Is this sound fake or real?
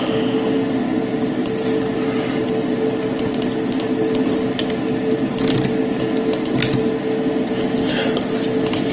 real